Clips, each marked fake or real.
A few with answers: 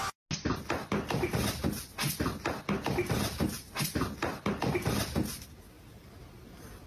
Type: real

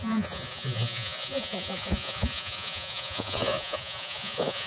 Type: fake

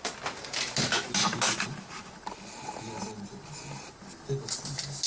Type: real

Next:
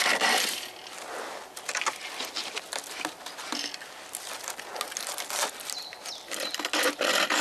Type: real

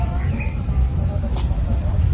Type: real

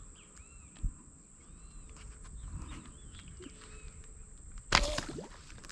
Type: real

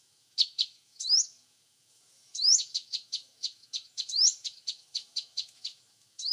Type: fake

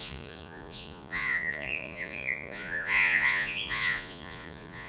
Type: fake